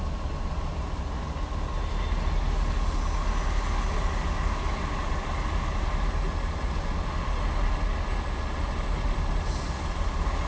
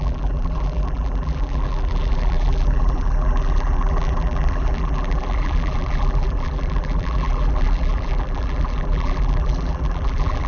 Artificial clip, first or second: second